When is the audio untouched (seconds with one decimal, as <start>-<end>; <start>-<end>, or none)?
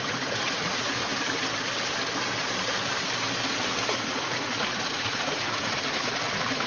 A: 1.1-3.9